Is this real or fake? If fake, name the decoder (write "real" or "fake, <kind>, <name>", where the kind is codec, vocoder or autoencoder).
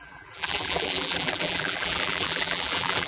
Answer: fake, vocoder, BigVGAN v2